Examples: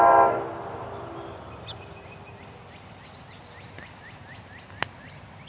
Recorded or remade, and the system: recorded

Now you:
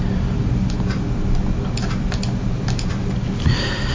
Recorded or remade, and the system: recorded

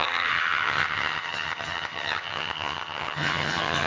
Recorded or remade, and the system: remade, vocoder, HiFi-GAN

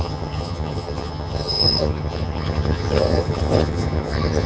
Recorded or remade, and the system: remade, vocoder, HiFi-GAN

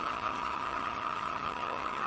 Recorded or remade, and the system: remade, vocoder, HiFi-GAN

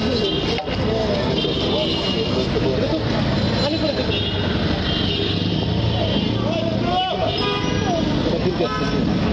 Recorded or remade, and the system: recorded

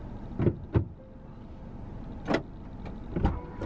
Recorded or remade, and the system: recorded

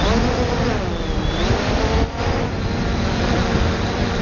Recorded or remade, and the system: recorded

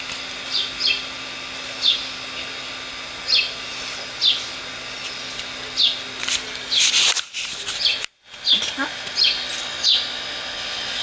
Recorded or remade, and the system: recorded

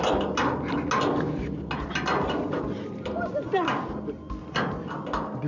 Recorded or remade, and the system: recorded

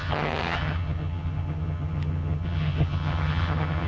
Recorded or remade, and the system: remade, vocoder, HiFi-GAN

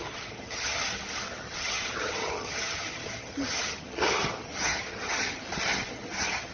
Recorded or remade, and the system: remade, vocoder, HiFi-GAN